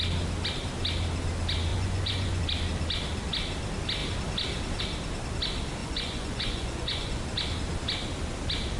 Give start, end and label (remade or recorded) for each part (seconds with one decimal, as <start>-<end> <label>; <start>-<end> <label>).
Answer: 0.0-1.7 recorded; 1.7-2.4 remade; 2.4-5.8 recorded; 5.8-7.2 remade; 7.2-8.8 recorded